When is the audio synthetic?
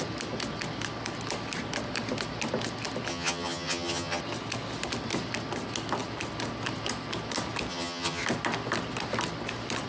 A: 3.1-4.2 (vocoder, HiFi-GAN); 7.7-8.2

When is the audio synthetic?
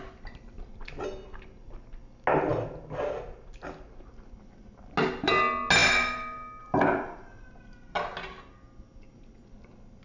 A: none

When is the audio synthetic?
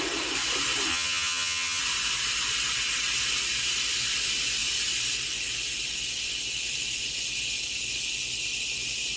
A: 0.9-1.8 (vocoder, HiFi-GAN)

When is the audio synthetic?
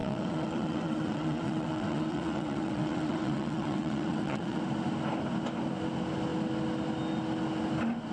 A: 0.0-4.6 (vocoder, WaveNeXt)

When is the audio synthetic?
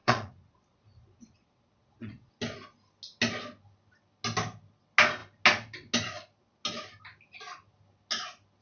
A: 0.0-2.3 (vocoder, Vocos)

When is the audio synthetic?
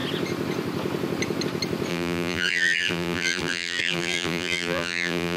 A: 1.9-5.4 (vocoder, BigVGAN v2)